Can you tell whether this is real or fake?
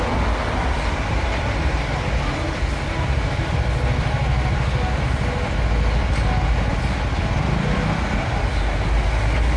real